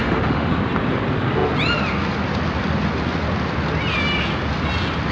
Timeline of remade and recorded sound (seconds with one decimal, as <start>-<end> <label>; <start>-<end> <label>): 0.0-0.5 remade; 0.5-5.1 recorded